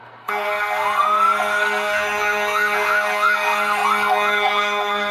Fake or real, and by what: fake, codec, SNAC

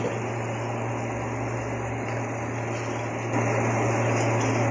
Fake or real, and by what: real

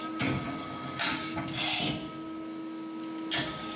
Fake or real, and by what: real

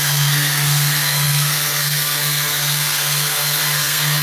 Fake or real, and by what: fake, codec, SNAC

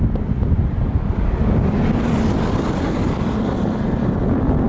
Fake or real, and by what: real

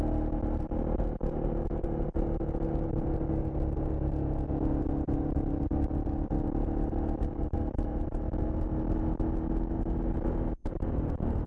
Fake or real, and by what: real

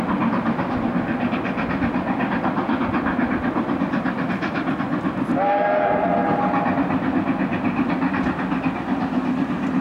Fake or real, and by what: real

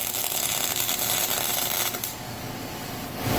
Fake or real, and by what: real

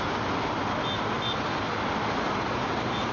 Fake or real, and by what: real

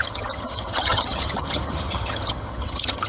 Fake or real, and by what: fake, vocoder, HiFi-GAN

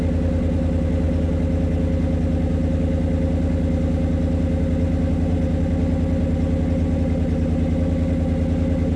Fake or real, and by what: real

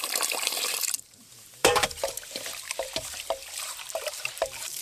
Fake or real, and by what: fake, vocoder, BigVGAN v2